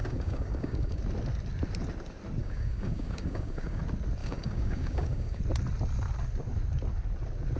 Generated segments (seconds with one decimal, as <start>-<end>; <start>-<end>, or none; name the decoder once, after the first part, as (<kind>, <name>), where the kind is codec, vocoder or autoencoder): 0.0-1.0 (codec, DAC); 2.4-3.8; 4.2-5.4